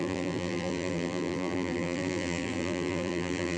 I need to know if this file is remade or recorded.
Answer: remade